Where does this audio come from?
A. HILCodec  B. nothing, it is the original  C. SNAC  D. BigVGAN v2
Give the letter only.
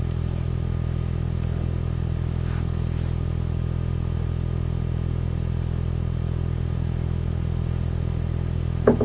B